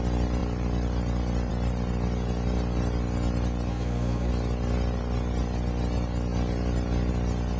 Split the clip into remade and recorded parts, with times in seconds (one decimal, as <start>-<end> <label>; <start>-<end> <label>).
0.0-3.7 recorded; 3.7-4.3 remade; 4.3-7.6 recorded